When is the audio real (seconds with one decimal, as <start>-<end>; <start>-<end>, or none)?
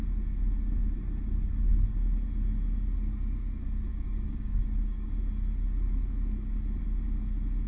0.0-3.9; 5.1-7.7